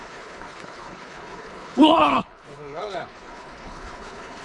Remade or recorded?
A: remade